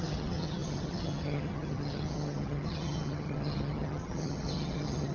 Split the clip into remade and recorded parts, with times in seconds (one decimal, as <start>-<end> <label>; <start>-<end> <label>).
0.0-5.1 remade